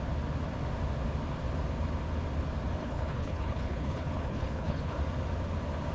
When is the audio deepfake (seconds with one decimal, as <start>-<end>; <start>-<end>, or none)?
2.8-5.0